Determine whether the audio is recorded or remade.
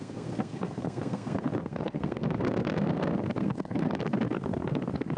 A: remade